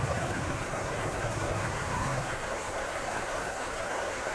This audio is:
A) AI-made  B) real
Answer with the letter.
A